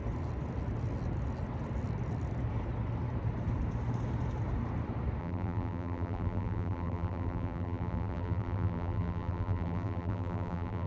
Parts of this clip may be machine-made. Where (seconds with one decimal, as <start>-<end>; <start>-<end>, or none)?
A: 5.2-10.9